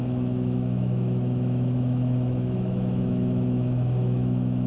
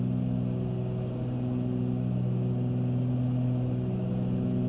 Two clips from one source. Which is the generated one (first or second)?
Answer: first